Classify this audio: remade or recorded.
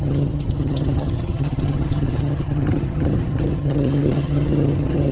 remade